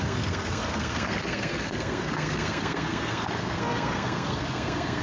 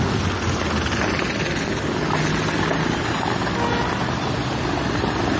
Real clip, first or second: second